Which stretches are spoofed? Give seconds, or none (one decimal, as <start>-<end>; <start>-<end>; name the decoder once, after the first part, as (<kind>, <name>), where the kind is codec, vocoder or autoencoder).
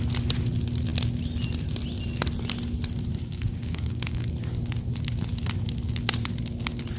3.2-4.3 (codec, DAC)